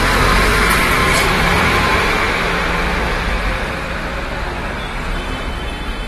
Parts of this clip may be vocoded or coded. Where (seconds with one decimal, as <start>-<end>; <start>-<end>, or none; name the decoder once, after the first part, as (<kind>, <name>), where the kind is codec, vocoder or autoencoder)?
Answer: 1.0-2.2 (vocoder, BigVGAN v2)